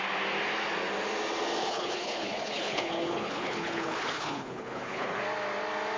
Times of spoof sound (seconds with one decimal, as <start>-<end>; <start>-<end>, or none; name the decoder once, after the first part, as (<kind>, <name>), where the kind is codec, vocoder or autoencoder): 1.6-5.2 (codec, HILCodec)